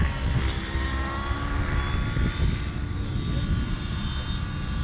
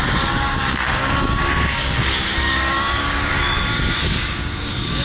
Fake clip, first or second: second